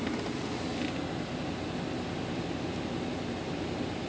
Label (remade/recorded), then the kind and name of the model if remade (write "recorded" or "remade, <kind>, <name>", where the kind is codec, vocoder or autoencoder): recorded